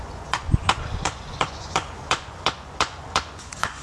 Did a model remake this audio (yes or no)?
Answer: yes